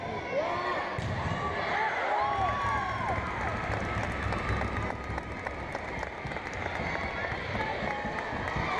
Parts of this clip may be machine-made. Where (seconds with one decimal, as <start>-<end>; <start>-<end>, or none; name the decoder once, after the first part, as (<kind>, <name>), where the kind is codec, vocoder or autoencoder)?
none